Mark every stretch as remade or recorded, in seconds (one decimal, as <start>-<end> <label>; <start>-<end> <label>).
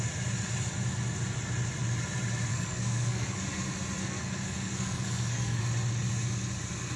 0.0-2.5 recorded; 2.5-3.4 remade; 3.4-4.0 recorded; 4.0-5.6 remade; 5.6-7.0 recorded